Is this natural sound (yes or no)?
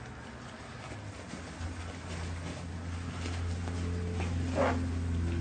yes